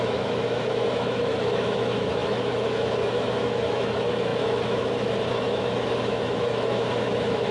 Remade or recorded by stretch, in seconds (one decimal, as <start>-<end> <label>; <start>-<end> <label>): 0.0-7.5 remade